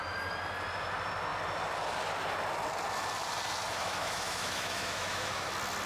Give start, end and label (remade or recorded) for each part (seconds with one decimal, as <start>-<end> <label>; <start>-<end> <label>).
0.0-3.8 recorded; 3.8-5.5 remade; 5.5-5.9 recorded